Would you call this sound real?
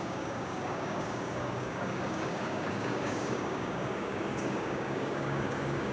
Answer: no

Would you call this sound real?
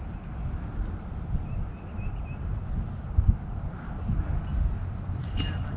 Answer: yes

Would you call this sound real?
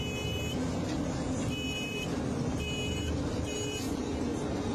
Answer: yes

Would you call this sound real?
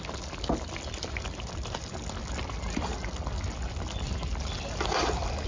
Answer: yes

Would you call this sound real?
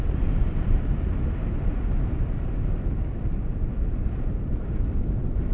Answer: yes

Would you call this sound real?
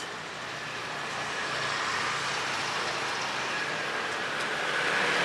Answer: yes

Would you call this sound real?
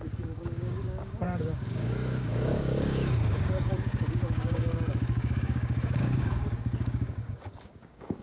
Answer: no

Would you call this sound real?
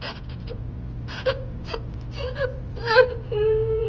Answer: yes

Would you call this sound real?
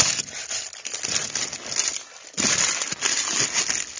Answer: yes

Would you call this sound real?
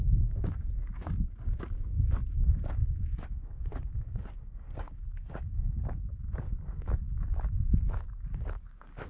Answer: no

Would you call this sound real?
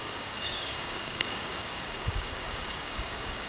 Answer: no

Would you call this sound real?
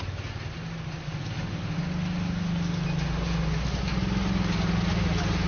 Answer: yes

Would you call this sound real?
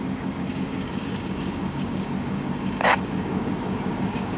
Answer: no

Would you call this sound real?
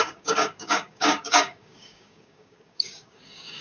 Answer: no